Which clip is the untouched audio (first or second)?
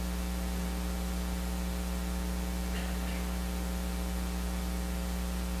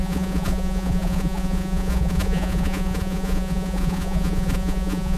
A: first